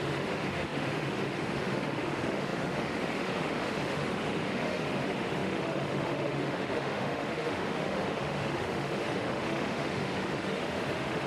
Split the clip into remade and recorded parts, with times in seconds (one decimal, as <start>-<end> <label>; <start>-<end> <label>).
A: 0.0-11.3 remade